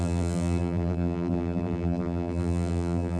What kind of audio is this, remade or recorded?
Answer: remade